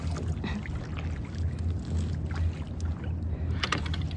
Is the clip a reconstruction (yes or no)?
no